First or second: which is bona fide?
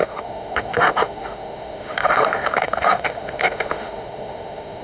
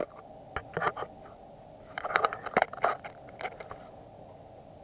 second